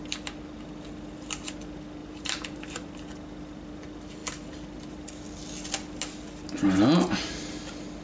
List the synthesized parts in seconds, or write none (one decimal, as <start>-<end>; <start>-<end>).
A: 2.0-2.9